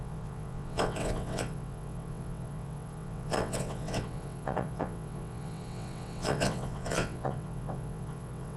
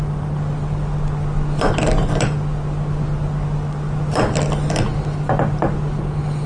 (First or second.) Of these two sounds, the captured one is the second